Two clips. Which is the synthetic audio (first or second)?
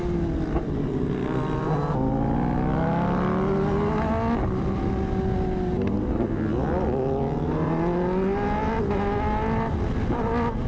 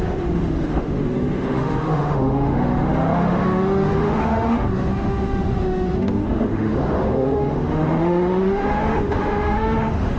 second